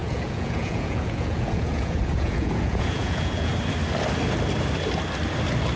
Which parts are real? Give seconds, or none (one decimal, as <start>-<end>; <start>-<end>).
3.5-5.8